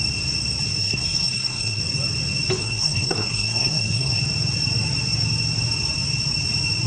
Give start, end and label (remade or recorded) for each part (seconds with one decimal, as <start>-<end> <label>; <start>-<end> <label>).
0.0-0.8 recorded; 0.8-1.8 remade; 1.8-2.6 recorded; 2.6-4.2 remade; 4.2-6.9 recorded